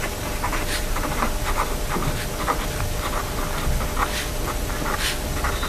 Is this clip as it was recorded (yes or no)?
yes